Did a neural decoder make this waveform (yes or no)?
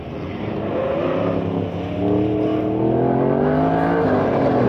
no